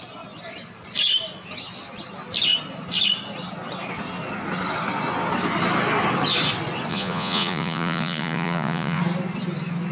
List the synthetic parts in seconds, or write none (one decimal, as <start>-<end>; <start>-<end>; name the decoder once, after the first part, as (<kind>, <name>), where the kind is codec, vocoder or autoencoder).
6.9-9.0 (vocoder, Vocos)

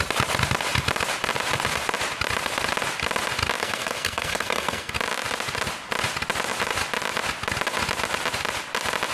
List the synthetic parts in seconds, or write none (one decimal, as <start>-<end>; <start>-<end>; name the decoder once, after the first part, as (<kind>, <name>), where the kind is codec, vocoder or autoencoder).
3.6-4.9 (codec, SNAC)

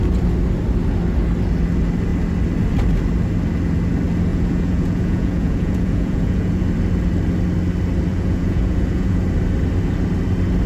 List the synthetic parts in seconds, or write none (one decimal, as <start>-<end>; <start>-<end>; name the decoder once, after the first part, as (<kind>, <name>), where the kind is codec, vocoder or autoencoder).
4.3-6.6 (vocoder, Vocos); 8.1-9.2

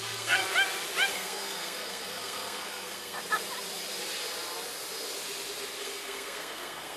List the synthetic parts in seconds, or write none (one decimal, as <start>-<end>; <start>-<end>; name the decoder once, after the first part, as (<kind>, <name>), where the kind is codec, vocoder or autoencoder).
0.0-0.4 (codec, SNAC); 1.1-3.2; 5.8-7.0